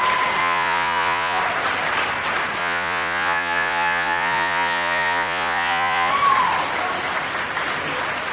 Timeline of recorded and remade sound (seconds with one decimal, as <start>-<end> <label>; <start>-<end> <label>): 0.0-0.4 recorded; 0.4-1.4 remade; 1.4-2.6 recorded; 2.6-6.1 remade; 6.1-8.3 recorded